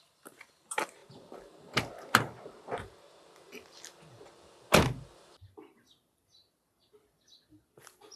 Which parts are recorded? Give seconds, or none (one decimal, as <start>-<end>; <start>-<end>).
0.0-8.2